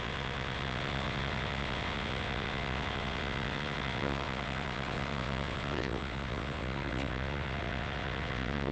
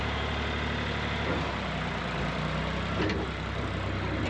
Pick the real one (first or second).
second